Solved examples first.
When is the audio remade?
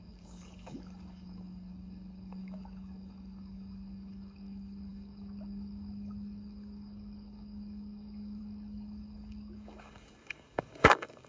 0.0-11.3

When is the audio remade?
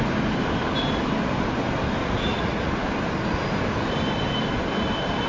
2.0-2.7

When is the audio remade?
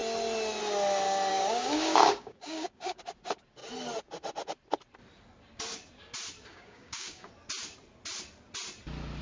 1.3-3.0; 6.5-7.3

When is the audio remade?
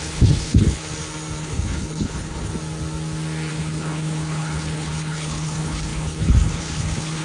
0.0-0.8; 1.4-2.5; 3.5-7.2